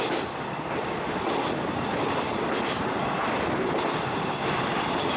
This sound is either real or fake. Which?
real